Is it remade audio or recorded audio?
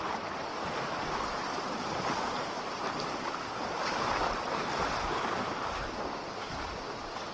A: recorded